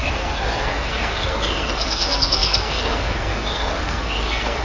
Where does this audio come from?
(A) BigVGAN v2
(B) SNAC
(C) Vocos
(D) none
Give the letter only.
B